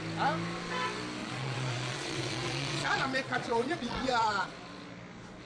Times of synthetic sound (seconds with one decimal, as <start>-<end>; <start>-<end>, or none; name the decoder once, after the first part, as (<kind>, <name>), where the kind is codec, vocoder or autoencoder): 1.2-4.5 (vocoder, Vocos)